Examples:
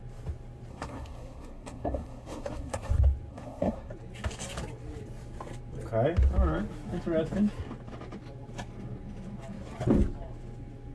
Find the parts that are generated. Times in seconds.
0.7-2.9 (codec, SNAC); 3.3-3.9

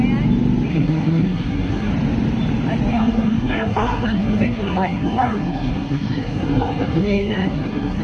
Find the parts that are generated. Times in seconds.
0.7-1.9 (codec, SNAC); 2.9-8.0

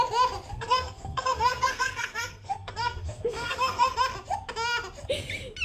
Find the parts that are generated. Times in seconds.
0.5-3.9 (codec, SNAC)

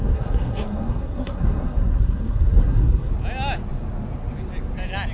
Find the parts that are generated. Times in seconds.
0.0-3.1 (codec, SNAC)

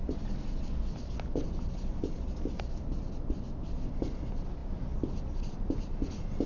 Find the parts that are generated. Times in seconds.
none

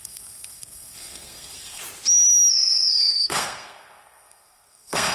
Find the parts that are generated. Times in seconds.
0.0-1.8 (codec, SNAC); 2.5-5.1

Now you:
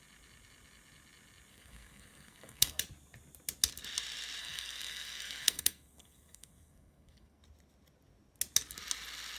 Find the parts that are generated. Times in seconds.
1.5-2.8 (codec, SNAC); 4.4-7.4